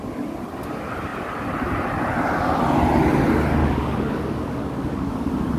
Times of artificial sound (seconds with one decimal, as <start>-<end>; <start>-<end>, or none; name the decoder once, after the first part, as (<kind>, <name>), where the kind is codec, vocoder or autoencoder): 3.6-5.1 (codec, DAC)